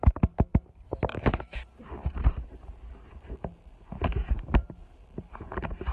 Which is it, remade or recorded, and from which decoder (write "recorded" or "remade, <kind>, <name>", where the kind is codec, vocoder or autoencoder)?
remade, vocoder, BigVGAN v2